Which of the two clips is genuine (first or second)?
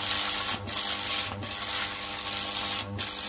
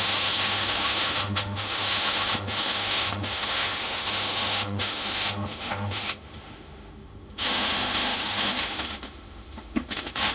first